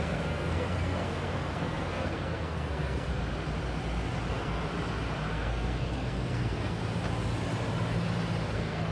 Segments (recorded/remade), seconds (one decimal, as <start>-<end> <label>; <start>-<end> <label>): 0.0-3.2 remade; 3.2-4.3 recorded; 4.3-4.7 remade; 4.7-5.3 recorded; 5.3-6.8 remade; 6.8-8.5 recorded; 8.5-8.9 remade